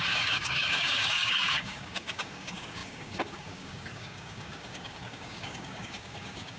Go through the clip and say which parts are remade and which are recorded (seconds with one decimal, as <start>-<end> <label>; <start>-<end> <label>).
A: 0.0-6.6 remade